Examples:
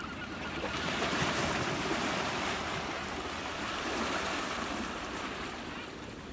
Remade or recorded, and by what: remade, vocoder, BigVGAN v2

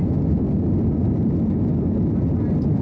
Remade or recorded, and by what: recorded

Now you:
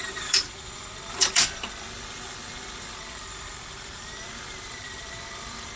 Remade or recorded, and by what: remade, vocoder, BigVGAN v2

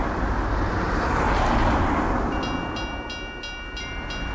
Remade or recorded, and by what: recorded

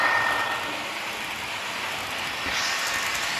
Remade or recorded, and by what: recorded